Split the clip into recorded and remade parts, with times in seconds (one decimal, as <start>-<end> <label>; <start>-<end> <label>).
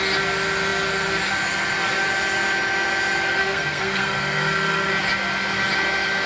0.0-3.4 recorded; 3.4-4.9 remade; 4.9-6.3 recorded